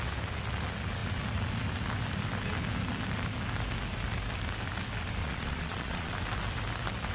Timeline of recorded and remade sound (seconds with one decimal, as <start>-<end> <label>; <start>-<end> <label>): 0.0-5.2 recorded; 5.2-6.1 remade; 6.1-7.1 recorded